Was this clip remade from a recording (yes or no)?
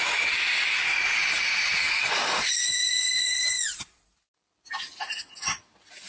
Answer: no